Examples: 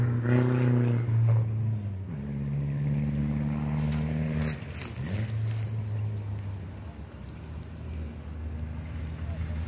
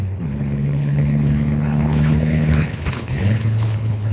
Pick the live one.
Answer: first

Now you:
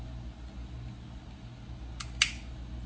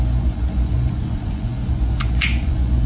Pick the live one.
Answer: first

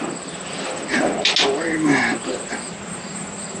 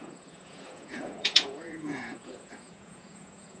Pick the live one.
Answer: first